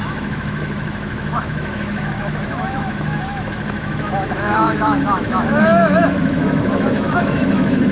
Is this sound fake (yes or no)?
yes